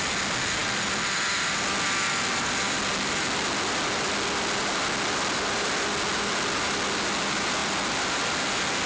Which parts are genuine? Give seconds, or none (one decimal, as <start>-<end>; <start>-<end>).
0.0-8.9